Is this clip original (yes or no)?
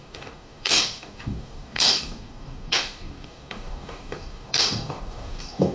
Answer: no